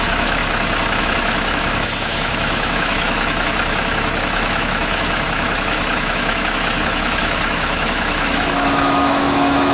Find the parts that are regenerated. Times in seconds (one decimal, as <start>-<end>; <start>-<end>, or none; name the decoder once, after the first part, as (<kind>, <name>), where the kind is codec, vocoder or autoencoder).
0.0-0.4 (autoencoder, DAC-VAE); 1.0-9.7